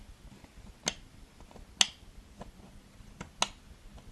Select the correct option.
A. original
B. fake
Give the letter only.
A